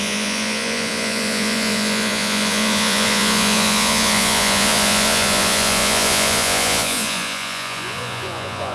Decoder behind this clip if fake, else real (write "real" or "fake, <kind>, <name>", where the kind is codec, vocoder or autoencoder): fake, vocoder, Vocos